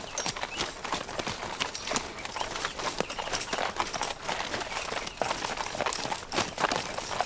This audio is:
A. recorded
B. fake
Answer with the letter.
A